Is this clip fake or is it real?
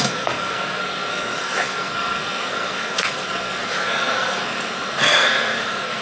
fake